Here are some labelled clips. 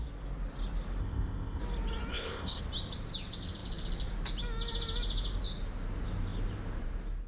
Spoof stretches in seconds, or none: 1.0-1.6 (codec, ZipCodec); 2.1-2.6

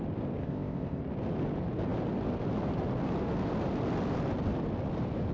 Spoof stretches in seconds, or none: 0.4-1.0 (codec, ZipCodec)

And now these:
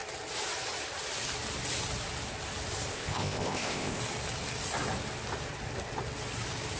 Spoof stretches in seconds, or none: 2.9-4.0 (codec, ZipCodec)